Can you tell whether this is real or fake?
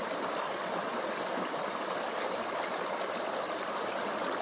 real